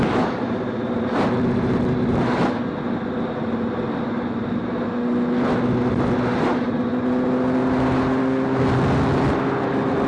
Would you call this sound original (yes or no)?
yes